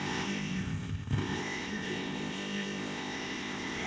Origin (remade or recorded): remade